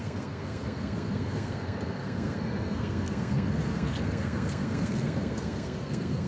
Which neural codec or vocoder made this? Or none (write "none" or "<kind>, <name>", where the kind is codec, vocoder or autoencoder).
codec, SNAC